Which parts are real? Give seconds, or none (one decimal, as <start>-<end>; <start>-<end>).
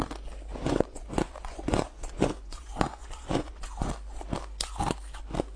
0.0-0.5; 3.9-5.6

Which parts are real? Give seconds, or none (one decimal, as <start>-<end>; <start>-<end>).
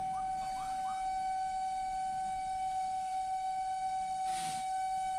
0.0-5.2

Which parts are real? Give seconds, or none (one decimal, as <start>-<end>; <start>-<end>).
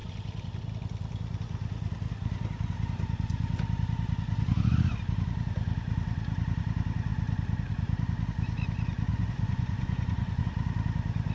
0.0-9.1; 10.4-11.3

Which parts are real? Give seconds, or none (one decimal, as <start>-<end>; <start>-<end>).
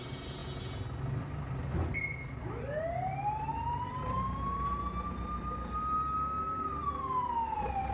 0.0-7.9